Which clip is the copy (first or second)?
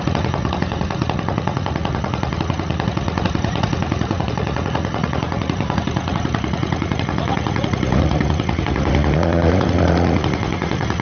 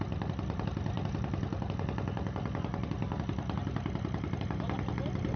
first